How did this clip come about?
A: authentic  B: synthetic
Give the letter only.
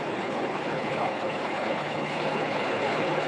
B